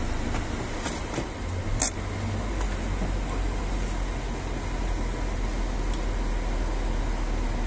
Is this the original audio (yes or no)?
yes